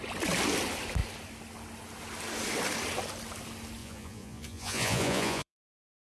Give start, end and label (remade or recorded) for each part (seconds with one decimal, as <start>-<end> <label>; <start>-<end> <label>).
0.0-3.8 recorded; 3.8-6.0 remade